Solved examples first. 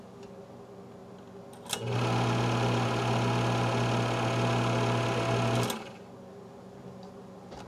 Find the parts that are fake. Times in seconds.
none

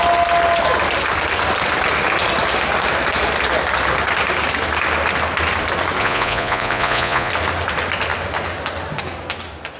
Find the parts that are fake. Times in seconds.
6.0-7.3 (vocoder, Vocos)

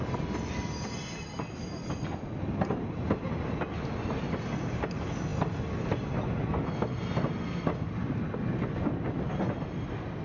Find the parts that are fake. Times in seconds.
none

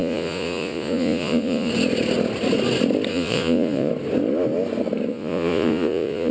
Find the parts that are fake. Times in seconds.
0.0-1.7 (vocoder, Vocos); 3.1-3.9; 5.1-6.3

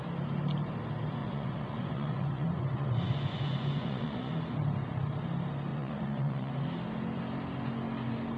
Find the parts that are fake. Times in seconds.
1.2-4.3 (vocoder, Vocos); 5.7-6.5